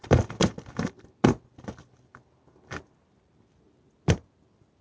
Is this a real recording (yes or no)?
yes